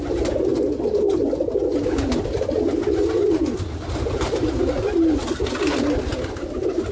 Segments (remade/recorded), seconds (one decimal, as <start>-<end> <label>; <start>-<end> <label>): 0.0-6.9 recorded